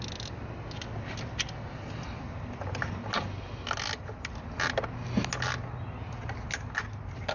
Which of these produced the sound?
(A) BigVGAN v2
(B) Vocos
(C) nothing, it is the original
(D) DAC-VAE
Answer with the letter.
C